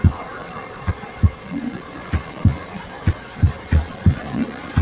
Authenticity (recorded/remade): remade